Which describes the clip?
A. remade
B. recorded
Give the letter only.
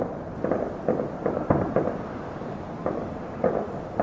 B